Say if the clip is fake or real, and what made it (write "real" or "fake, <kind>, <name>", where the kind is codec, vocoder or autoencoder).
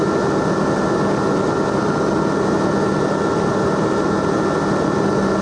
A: real